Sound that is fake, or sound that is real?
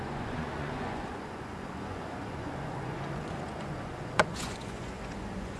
fake